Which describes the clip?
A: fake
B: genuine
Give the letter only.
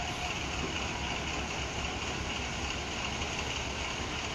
B